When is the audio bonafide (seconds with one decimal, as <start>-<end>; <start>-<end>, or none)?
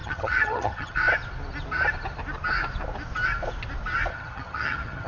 1.0-4.1